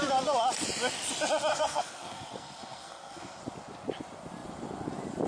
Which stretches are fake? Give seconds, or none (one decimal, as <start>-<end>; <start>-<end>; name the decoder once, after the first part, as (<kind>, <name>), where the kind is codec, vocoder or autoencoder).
1.5-3.4 (codec, SNAC)